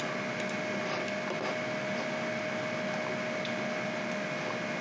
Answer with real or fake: real